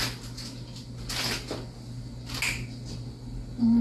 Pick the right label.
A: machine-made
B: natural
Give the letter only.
B